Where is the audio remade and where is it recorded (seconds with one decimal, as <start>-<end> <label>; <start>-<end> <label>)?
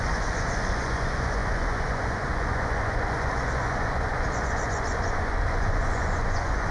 0.0-6.7 remade